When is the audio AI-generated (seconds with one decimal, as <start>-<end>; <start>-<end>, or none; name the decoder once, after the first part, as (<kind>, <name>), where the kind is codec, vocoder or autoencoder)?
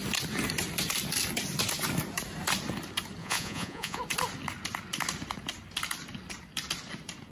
3.2-4.0 (vocoder, Vocos)